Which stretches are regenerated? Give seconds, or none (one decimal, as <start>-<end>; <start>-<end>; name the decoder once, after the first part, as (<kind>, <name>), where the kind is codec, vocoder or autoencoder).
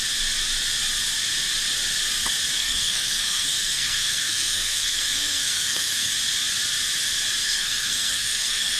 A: 2.6-6.1 (codec, SNAC); 7.4-8.8